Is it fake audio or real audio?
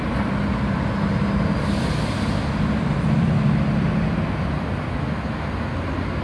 real